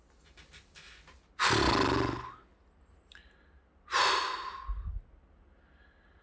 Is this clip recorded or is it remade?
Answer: recorded